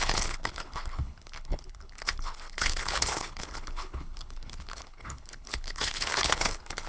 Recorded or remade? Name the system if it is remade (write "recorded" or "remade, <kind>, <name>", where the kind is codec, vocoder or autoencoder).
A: remade, codec, HILCodec